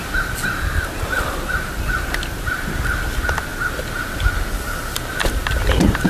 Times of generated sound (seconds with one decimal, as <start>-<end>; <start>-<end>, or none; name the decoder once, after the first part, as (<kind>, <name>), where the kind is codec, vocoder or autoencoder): 5.2-6.1 (vocoder, BigVGAN v2)